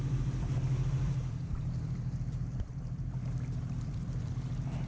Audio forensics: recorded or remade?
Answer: remade